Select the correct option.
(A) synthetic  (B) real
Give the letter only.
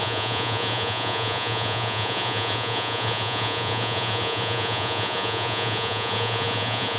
A